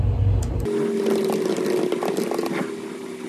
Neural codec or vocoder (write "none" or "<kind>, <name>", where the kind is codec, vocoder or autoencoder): none